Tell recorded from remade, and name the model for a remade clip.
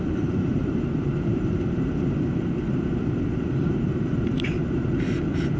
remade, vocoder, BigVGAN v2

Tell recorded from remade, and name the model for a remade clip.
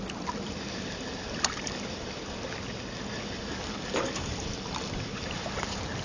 recorded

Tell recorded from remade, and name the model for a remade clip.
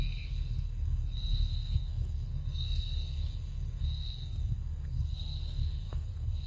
remade, codec, SNAC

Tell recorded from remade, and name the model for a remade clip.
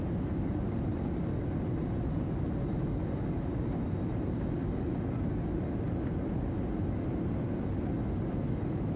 recorded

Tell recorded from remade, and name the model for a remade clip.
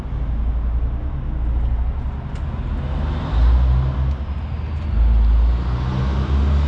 recorded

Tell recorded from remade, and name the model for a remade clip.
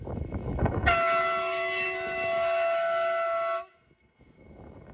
remade, autoencoder, DAC-VAE